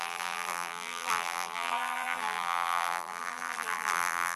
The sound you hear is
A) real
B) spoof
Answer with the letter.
B